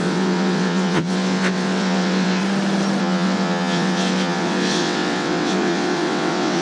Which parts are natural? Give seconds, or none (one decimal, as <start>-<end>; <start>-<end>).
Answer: 2.4-3.0